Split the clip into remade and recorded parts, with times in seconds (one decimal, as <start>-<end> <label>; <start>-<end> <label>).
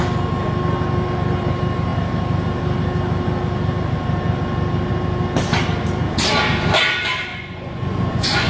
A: 0.0-7.3 recorded; 7.3-8.5 remade